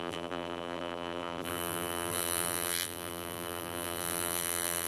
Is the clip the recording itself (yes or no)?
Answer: no